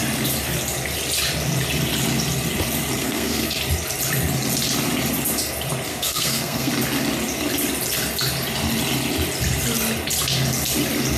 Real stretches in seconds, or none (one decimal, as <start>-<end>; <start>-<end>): 0.0-3.0; 3.6-5.9; 6.7-11.2